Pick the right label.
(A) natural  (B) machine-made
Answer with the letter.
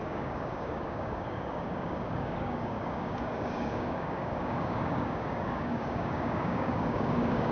B